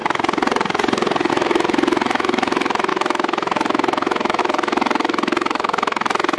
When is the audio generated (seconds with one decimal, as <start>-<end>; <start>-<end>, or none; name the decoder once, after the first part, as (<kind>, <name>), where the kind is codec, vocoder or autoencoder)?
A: 1.3-6.4 (autoencoder, DAC-VAE)